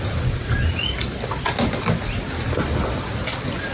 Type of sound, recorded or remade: recorded